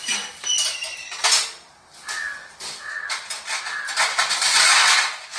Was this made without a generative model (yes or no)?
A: yes